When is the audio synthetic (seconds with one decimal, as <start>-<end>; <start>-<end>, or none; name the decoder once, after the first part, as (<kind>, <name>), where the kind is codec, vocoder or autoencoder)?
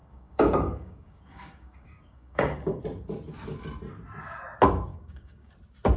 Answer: 0.0-2.8 (codec, DAC); 4.9-5.5